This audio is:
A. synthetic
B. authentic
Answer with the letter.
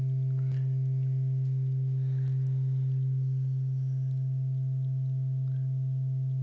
B